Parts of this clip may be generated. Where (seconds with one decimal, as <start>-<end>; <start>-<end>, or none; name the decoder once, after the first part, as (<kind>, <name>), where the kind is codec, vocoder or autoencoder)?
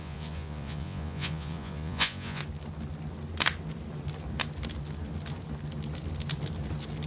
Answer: 0.0-2.4 (vocoder, Vocos)